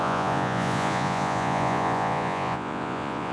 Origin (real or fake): fake